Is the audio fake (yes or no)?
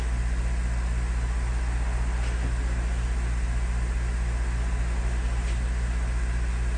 no